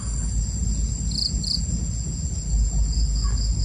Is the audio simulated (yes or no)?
no